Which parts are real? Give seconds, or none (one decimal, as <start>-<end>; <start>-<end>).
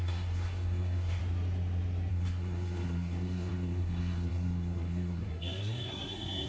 1.2-2.1